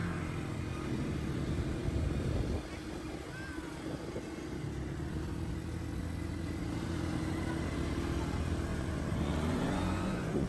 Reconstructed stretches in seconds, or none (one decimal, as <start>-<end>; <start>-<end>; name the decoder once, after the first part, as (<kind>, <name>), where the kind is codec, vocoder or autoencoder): 8.7-10.5 (vocoder, Vocos)